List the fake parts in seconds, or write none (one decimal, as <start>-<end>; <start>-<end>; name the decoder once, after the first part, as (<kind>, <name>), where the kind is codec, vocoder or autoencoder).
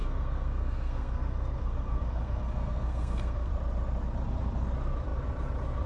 0.0-3.5 (codec, SNAC)